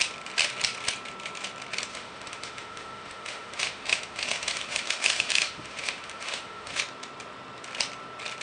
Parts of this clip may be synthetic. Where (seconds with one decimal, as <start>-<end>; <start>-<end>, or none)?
1.9-6.8